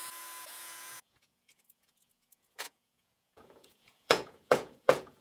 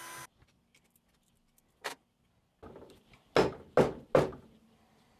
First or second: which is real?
second